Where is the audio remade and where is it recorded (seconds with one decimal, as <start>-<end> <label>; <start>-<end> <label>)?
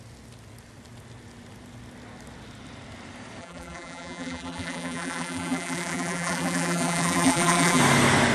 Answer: 0.0-3.4 recorded; 3.4-7.8 remade; 7.8-8.3 recorded